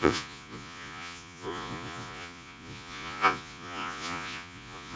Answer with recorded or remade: remade